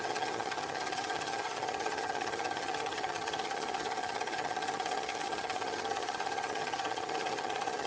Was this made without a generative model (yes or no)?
no